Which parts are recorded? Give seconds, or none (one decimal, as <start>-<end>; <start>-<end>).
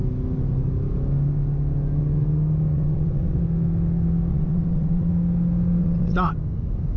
0.0-2.7; 3.4-4.3; 5.1-5.8; 6.3-7.0